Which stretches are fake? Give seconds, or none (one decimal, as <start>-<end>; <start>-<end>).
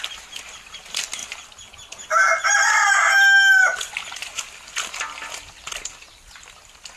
none